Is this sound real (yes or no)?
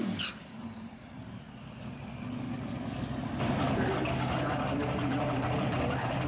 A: yes